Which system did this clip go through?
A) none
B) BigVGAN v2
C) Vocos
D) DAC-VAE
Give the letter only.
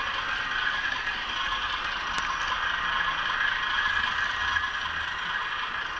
A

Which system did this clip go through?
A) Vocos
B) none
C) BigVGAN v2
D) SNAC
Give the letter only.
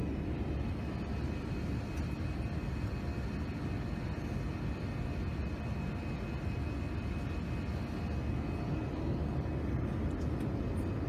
B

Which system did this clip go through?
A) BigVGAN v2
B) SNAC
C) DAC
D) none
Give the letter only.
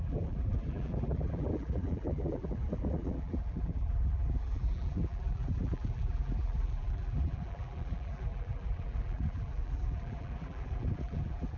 A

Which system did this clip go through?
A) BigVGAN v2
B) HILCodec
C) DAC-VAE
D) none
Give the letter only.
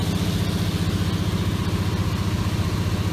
D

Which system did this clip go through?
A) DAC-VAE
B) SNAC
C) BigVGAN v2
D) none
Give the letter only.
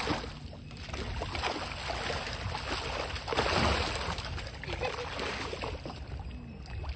D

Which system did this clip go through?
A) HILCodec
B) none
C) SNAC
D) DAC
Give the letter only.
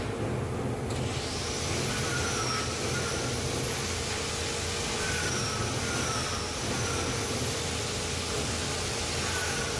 B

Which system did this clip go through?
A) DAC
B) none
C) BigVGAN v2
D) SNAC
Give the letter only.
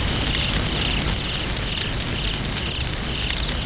B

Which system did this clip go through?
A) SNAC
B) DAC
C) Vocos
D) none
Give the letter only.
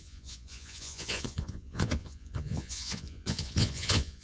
C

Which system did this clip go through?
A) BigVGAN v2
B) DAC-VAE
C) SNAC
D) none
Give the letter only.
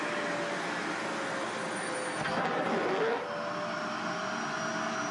D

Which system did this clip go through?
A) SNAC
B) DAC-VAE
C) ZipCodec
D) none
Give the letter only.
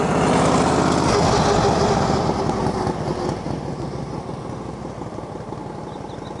D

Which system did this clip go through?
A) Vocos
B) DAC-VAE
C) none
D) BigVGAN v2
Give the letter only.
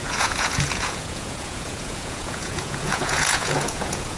A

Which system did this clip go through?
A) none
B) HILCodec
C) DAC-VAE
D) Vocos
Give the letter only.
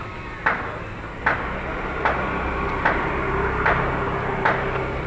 A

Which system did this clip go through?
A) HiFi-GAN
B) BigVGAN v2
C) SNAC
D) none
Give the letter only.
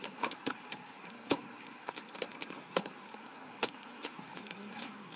C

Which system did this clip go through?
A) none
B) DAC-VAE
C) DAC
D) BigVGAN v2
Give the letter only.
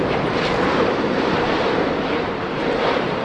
D